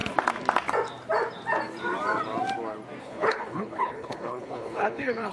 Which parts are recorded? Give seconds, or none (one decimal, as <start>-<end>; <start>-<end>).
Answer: 0.0-3.0